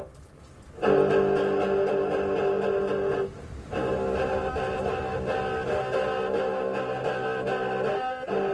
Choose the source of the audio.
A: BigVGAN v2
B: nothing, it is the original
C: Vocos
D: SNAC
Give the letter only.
B